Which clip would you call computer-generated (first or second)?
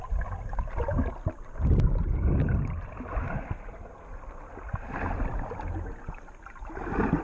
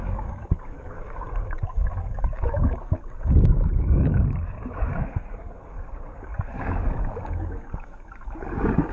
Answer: second